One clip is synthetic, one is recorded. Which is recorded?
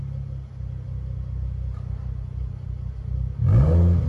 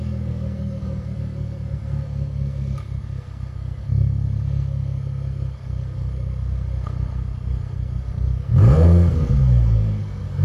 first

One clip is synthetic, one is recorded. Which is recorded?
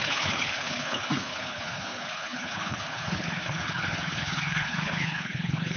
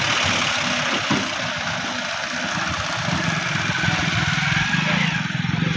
second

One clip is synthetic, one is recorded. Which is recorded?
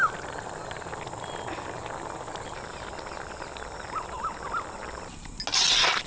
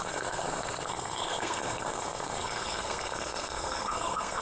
first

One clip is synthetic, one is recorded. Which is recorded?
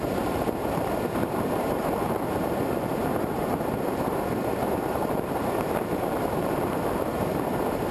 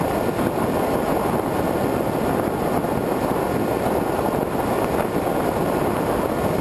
second